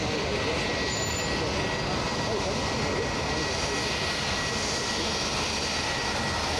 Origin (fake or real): real